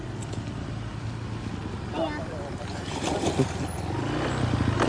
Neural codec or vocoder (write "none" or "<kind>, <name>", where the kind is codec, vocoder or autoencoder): none